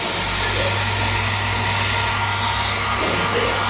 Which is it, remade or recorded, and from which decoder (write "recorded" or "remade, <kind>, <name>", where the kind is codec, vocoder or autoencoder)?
recorded